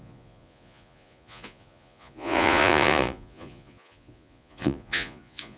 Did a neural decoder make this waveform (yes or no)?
yes